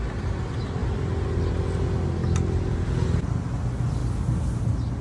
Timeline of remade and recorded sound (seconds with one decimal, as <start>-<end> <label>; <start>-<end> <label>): 0.0-5.0 recorded